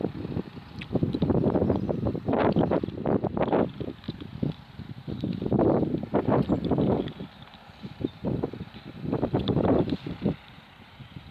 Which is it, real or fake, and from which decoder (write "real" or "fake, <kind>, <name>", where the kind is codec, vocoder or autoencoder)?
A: fake, vocoder, BigVGAN v2